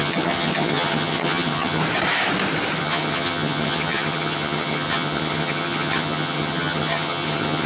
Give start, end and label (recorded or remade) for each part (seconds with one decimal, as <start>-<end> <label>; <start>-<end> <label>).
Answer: 0.0-1.8 remade; 1.8-2.8 recorded; 2.8-7.7 remade